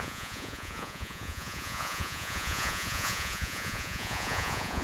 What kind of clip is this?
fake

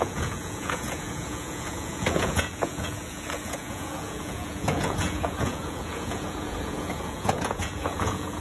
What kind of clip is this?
fake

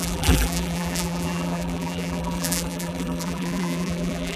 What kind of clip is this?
fake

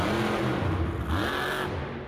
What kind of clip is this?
real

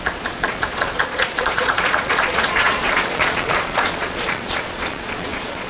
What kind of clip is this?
fake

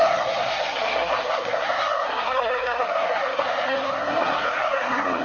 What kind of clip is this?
fake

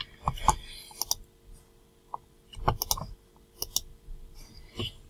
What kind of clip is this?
real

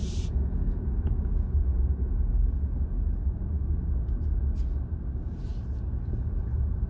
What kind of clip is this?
real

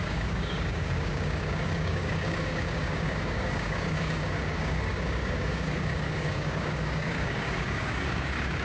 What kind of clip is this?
fake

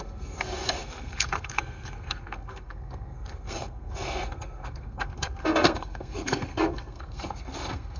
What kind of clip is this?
fake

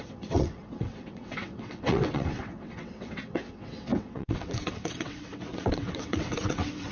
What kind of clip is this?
fake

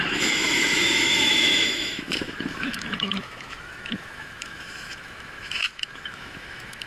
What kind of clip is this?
fake